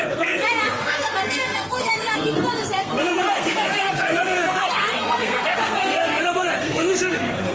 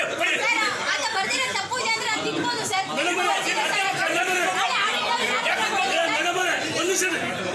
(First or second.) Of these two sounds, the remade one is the first